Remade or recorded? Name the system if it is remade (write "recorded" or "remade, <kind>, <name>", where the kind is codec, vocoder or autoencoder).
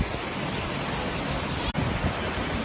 recorded